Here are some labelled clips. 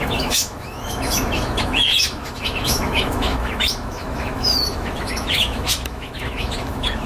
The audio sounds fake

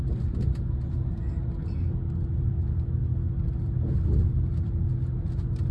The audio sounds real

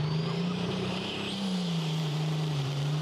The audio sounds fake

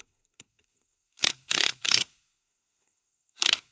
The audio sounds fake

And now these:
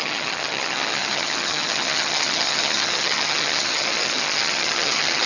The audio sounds fake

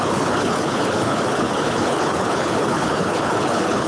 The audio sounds fake